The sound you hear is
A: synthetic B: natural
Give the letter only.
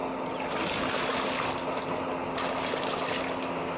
B